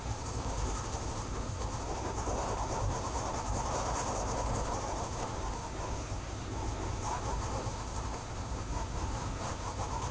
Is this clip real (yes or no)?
no